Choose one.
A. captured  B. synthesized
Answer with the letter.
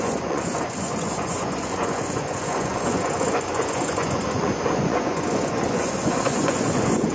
B